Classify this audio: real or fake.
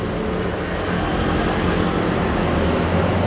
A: real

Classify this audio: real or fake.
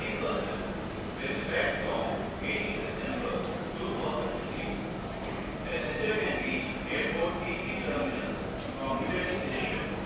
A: real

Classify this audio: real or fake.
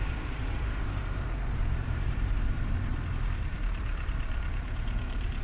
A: fake